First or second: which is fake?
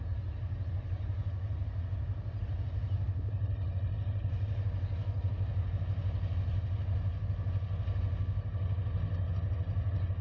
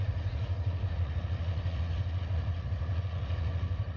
second